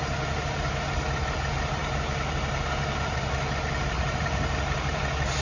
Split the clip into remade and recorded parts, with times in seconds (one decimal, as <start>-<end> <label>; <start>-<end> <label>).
0.0-1.8 recorded; 1.8-5.0 remade; 5.0-5.4 recorded